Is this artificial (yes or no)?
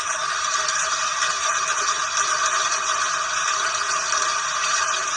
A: no